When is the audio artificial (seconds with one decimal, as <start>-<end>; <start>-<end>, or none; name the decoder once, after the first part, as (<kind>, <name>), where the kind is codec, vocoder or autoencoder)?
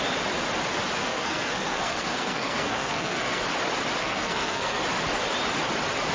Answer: 1.0-3.4 (codec, SNAC); 4.0-4.8